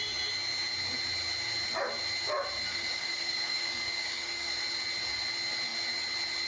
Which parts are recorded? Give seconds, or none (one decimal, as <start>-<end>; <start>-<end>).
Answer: 0.0-2.7; 4.5-6.5